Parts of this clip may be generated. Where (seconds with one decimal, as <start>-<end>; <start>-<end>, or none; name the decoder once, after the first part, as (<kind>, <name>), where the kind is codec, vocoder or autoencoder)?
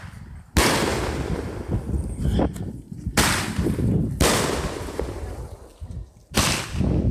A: none